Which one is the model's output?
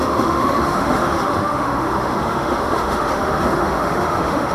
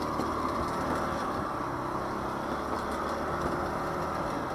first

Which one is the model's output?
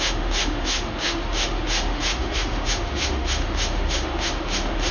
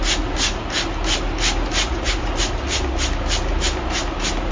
first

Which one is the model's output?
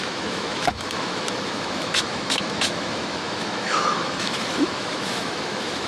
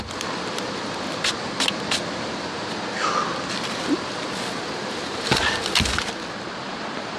first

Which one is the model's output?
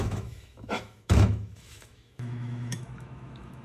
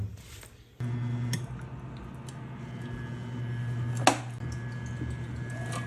first